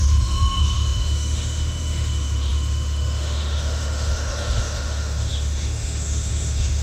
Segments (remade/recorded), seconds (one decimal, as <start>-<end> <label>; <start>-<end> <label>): 0.0-6.8 remade